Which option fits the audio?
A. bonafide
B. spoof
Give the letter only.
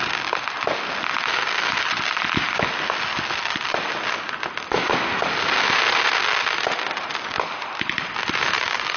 A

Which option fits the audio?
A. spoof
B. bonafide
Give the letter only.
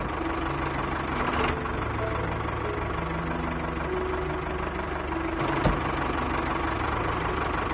B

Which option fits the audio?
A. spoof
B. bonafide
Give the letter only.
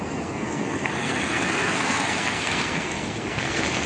A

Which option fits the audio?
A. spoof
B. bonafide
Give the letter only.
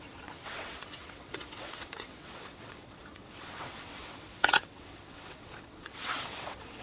A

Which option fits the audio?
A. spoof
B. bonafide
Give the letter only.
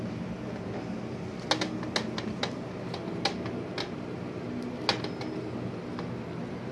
B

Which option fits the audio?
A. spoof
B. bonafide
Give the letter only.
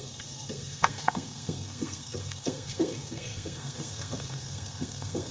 A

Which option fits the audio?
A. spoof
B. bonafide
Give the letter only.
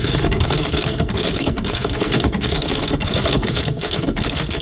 A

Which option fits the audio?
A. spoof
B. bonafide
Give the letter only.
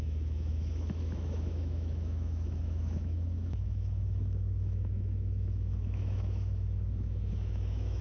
A